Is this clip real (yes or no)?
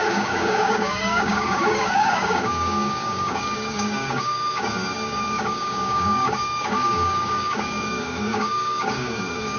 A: no